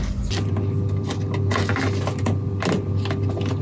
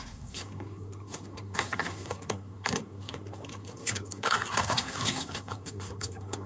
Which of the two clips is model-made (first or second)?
second